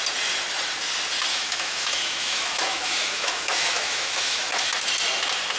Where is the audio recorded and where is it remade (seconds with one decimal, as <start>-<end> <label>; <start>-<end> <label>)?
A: 0.0-1.3 recorded; 1.3-4.7 remade; 4.7-5.6 recorded